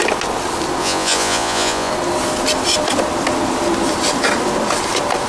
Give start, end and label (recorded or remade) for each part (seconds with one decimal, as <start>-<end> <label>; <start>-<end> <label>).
0.0-0.8 recorded; 0.8-1.9 remade; 1.9-5.3 recorded